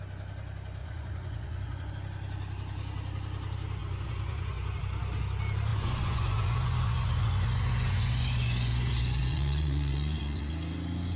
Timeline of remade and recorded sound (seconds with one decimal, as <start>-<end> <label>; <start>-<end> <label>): 0.0-0.8 recorded; 0.8-1.9 remade; 1.9-3.8 recorded; 3.8-4.8 remade; 4.8-5.7 recorded; 5.7-10.5 remade; 10.5-11.2 recorded